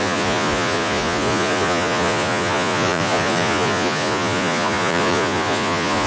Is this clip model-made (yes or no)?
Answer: yes